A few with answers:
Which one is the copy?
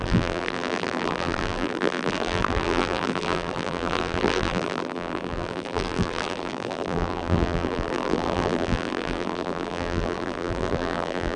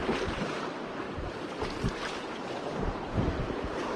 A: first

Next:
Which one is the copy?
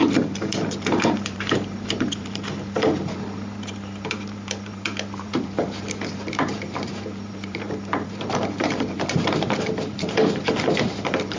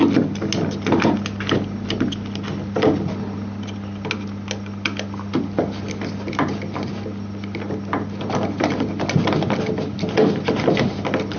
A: first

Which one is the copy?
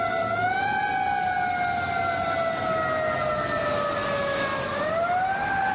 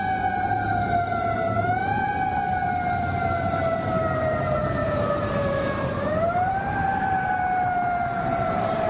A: second